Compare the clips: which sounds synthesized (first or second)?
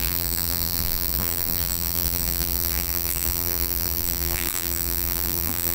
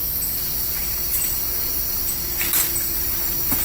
first